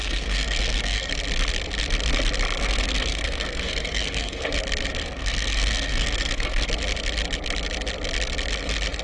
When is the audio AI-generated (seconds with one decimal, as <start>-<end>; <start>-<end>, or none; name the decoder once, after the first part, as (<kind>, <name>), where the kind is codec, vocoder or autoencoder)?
0.0-1.1 (codec, SNAC); 2.6-4.5; 4.9-6.7